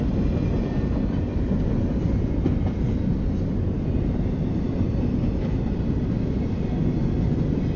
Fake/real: real